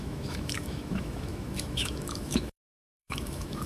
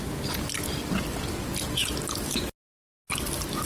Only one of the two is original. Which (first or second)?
second